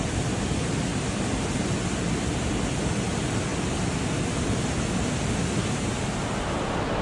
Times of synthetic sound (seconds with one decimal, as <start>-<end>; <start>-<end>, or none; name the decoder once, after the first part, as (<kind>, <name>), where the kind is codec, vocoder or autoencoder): 0.9-1.7 (vocoder, BigVGAN v2)